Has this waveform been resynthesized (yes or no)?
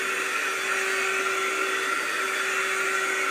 no